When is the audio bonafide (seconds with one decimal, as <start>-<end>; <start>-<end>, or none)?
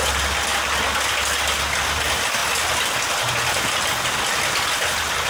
0.5-1.6; 2.4-4.1